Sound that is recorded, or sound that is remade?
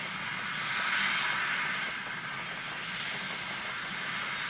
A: recorded